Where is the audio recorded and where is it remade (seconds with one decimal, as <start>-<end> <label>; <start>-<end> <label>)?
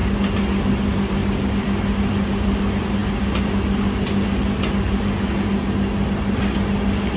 0.0-7.2 recorded